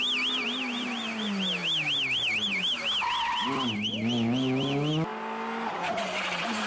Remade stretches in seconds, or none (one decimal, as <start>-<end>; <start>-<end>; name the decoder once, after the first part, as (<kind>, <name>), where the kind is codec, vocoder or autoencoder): none